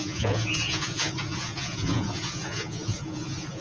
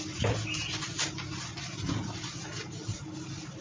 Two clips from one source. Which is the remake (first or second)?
first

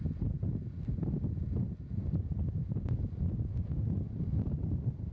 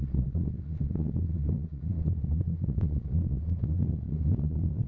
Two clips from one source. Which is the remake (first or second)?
second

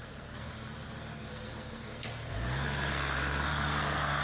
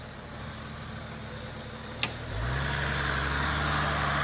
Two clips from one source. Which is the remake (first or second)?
first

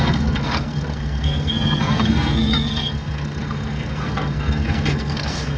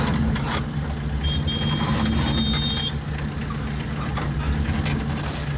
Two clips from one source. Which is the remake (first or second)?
first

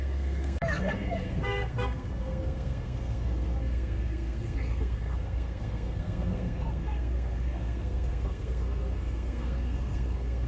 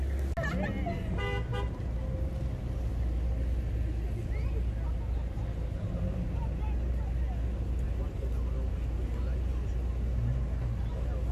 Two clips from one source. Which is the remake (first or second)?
first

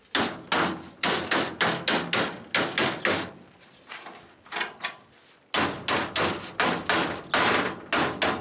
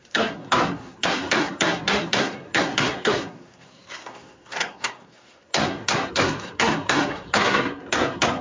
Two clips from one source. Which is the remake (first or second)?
second